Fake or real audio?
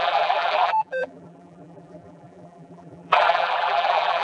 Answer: fake